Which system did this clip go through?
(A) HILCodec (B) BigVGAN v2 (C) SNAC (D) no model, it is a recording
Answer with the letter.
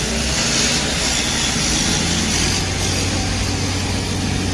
D